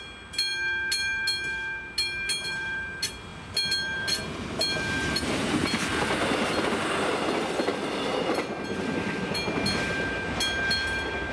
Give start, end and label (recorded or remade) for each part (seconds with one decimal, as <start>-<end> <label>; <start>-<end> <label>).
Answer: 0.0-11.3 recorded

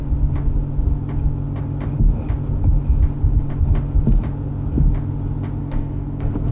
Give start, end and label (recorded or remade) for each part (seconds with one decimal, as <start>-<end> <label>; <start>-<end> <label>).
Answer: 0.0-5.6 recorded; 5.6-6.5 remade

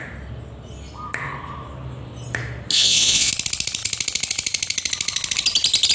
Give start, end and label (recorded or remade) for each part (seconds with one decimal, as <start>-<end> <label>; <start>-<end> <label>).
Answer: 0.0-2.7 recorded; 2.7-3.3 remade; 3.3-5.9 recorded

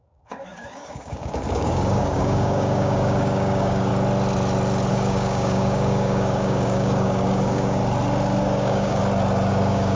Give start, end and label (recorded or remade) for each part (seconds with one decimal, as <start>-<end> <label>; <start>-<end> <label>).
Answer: 0.0-3.9 remade; 3.9-4.9 recorded; 4.9-7.8 remade; 7.8-8.4 recorded; 8.4-9.0 remade; 9.0-9.5 recorded; 9.5-10.0 remade

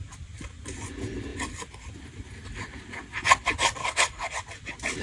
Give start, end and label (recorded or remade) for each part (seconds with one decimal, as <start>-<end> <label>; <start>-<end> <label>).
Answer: 0.0-3.8 recorded; 3.8-4.3 remade; 4.3-5.0 recorded

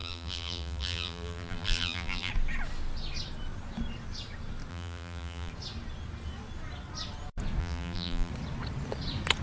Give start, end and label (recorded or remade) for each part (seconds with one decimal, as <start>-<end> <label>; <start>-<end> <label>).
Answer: 0.0-2.3 remade; 2.3-4.7 recorded; 4.7-5.5 remade; 5.5-7.6 recorded; 7.6-8.3 remade; 8.3-9.4 recorded